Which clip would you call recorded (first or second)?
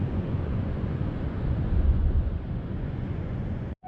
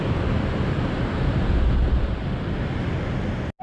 second